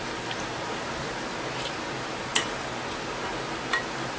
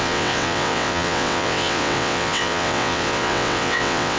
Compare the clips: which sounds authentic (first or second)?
first